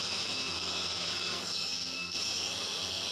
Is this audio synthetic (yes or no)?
yes